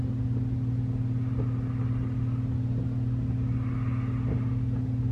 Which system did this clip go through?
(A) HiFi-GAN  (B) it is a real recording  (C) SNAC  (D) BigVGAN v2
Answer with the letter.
B